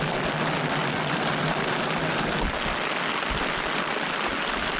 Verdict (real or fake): real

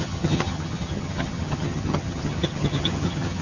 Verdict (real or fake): fake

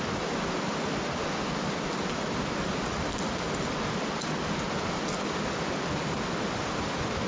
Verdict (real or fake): real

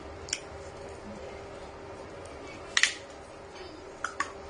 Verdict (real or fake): real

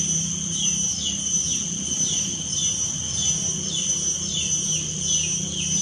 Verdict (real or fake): real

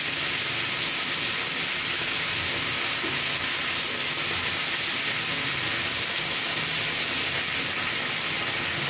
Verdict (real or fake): real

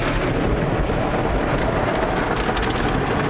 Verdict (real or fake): real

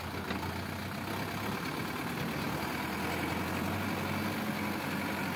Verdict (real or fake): real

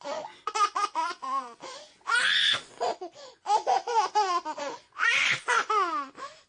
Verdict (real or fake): fake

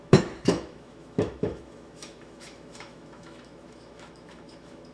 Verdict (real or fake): fake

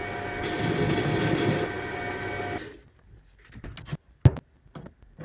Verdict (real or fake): real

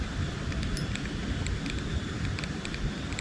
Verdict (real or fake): real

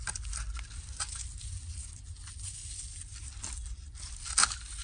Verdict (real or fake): real